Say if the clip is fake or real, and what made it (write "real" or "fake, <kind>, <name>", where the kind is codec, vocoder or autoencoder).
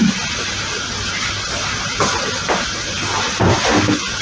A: real